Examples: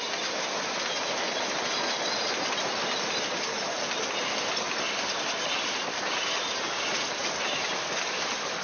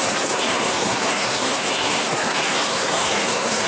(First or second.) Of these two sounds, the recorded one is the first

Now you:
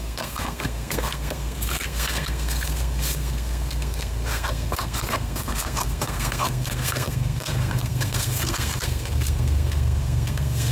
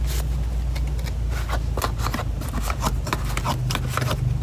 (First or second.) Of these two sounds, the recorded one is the second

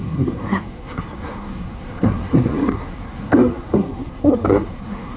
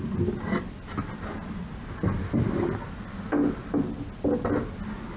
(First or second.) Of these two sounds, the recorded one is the second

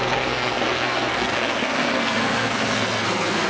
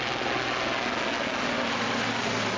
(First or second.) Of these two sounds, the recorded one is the second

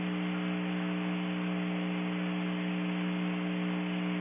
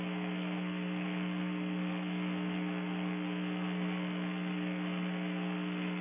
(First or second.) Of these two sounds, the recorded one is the first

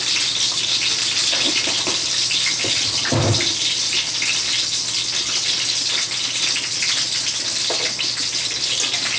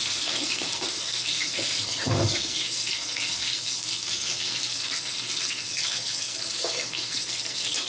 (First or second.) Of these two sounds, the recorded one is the first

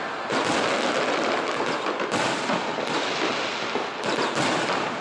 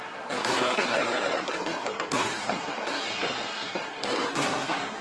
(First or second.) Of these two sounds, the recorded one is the first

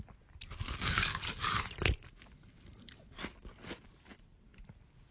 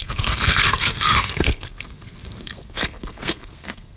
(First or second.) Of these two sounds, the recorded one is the first